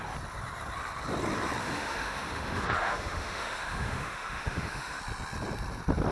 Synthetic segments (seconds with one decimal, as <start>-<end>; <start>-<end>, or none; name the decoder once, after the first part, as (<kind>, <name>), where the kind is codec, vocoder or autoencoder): 1.6-5.0 (autoencoder, DAC-VAE)